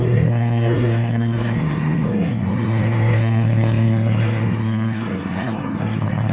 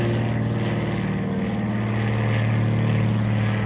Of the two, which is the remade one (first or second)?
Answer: first